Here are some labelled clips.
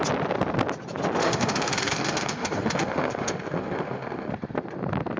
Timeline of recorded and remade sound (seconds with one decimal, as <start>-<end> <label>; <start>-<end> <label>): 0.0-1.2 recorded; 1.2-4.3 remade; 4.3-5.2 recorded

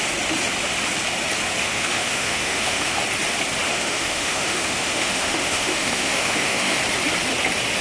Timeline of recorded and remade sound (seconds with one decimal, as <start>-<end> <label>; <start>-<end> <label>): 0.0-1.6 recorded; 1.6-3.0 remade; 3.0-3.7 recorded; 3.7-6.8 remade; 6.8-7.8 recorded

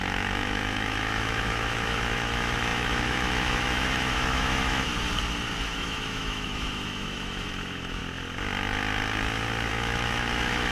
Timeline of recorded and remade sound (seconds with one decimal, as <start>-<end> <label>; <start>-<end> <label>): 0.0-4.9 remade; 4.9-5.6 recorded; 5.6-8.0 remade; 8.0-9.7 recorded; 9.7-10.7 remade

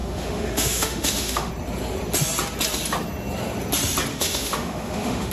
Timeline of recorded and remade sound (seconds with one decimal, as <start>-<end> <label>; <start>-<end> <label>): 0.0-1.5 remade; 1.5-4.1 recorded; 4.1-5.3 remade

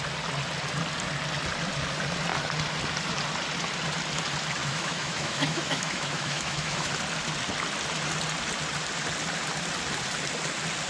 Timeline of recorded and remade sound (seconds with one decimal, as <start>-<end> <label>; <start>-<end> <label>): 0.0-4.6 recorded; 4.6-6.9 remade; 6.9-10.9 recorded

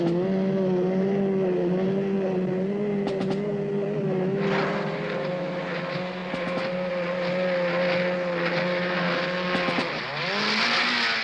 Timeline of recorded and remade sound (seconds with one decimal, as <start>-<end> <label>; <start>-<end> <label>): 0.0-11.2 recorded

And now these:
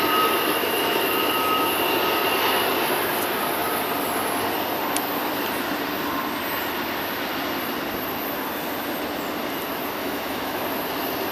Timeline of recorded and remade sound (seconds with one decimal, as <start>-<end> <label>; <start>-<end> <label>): 0.0-0.6 recorded; 0.6-1.7 remade; 1.7-10.0 recorded; 10.0-10.6 remade; 10.6-11.3 recorded

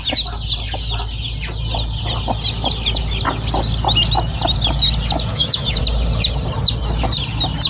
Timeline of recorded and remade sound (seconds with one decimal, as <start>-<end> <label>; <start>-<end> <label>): 0.0-5.3 recorded; 5.3-5.8 remade; 5.8-7.7 recorded